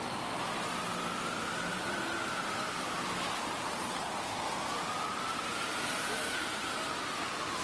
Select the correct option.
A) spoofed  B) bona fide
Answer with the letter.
B